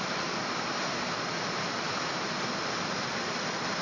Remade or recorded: remade